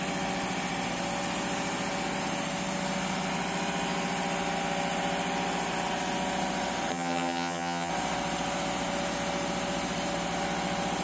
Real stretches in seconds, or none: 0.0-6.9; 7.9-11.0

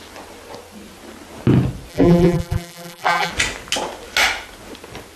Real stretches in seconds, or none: 0.0-1.9; 3.3-5.2